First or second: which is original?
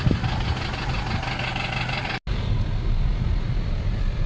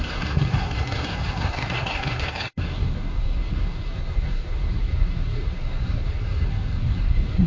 first